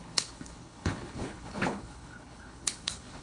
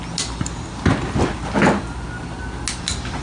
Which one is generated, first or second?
first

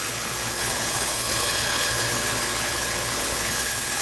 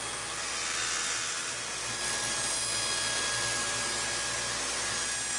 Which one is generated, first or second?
first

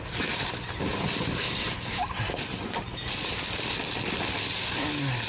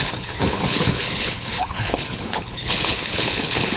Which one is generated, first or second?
second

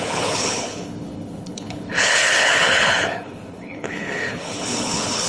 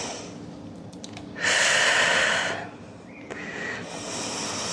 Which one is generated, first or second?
first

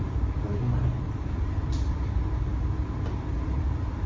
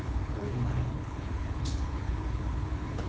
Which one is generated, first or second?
second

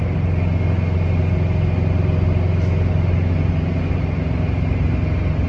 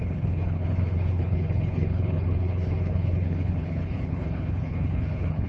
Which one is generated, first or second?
second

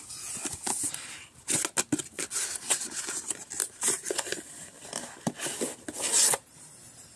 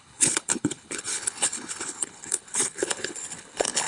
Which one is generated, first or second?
second